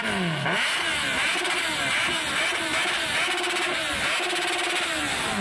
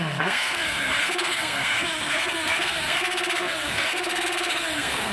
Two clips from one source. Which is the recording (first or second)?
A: first